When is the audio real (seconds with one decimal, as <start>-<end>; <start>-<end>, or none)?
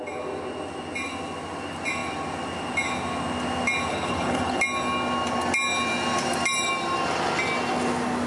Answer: 0.0-3.9; 4.6-8.3